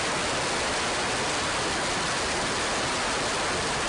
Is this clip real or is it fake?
real